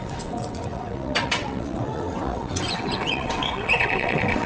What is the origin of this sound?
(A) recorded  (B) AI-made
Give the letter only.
B